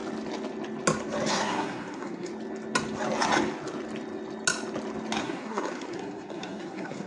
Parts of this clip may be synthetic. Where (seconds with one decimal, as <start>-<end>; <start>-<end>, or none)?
1.3-2.3; 5.2-7.1